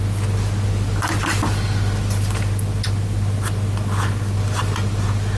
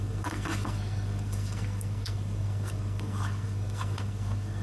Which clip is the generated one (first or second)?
second